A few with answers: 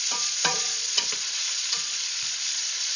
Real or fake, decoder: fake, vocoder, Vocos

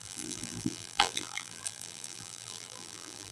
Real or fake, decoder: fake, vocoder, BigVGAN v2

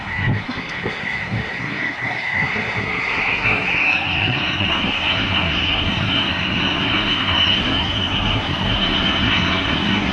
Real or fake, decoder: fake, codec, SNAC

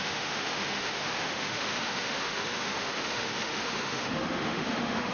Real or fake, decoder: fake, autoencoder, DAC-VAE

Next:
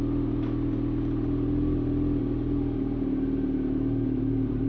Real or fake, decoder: real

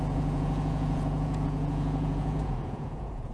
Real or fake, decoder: fake, vocoder, Vocos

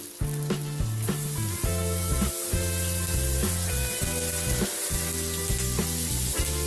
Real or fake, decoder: real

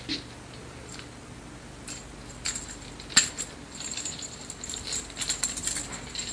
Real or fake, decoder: real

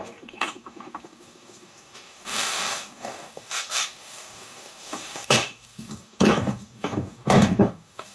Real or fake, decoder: fake, codec, DAC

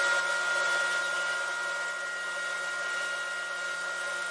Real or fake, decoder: real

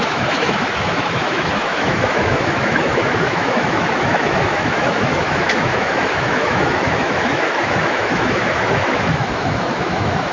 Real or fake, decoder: fake, autoencoder, DAC-VAE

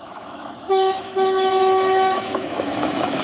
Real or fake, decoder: fake, autoencoder, DAC-VAE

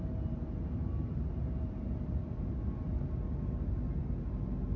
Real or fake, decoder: real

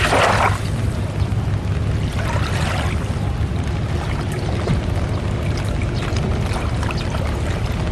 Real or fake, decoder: real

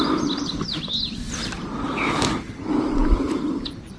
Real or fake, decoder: real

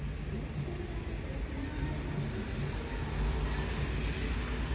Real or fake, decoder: real